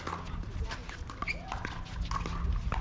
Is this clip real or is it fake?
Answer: real